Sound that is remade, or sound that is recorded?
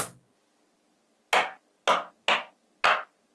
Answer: recorded